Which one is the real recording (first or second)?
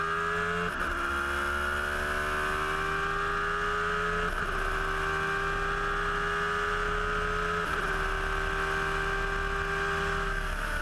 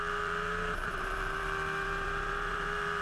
first